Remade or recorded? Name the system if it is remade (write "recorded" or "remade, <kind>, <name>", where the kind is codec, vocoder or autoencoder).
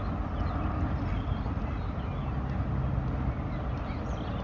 recorded